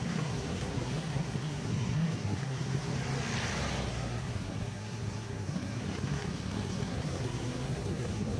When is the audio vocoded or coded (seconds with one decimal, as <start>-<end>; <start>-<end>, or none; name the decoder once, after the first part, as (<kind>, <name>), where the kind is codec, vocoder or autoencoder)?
0.0-2.9 (codec, SNAC); 3.9-8.4